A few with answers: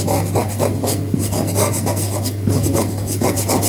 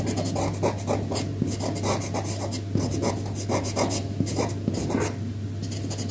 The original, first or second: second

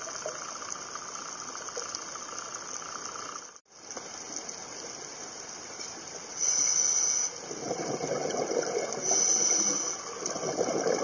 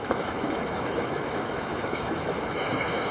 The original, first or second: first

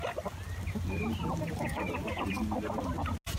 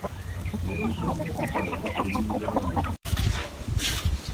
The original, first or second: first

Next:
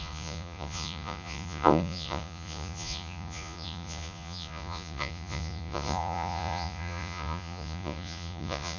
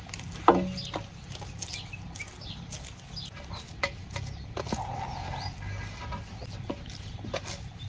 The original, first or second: second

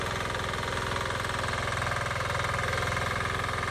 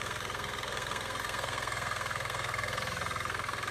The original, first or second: first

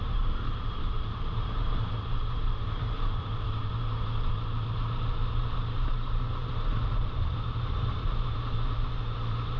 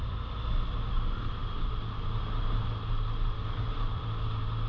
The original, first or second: second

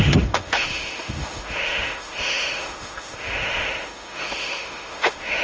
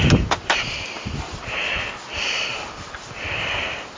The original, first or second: second